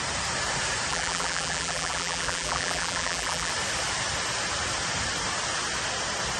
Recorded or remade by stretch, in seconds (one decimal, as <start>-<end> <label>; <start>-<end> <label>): 0.0-0.9 recorded; 0.9-3.5 remade; 3.5-6.4 recorded